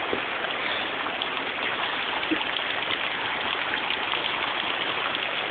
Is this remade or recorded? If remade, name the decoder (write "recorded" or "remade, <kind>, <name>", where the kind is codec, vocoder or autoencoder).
recorded